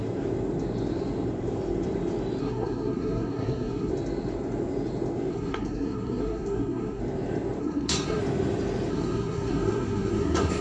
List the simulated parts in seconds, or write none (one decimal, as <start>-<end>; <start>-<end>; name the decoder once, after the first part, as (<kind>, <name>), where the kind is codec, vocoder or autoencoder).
2.4-3.9 (codec, SNAC); 5.3-7.0; 7.6-8.2; 8.9-10.6